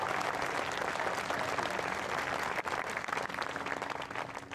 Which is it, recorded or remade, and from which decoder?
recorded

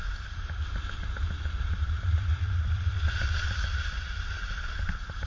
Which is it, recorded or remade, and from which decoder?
recorded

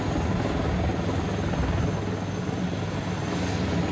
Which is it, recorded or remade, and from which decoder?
recorded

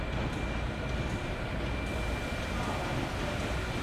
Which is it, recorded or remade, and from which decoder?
recorded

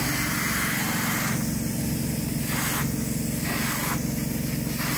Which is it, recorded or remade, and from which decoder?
recorded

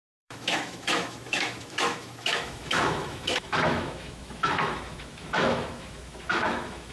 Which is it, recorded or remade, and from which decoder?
remade, autoencoder, DAC-VAE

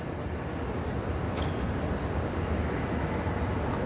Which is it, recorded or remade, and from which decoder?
recorded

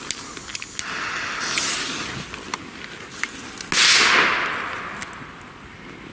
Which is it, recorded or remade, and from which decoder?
recorded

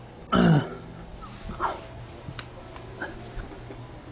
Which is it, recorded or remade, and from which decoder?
recorded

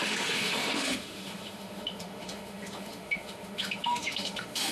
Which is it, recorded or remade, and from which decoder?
remade, autoencoder, DAC-VAE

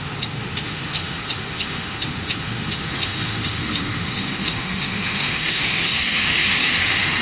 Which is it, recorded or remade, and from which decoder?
remade, autoencoder, DAC-VAE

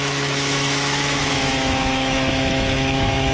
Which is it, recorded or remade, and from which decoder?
remade, autoencoder, DAC-VAE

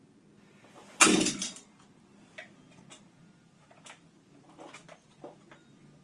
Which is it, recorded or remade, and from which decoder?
recorded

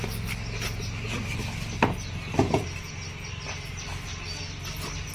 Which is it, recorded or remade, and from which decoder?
recorded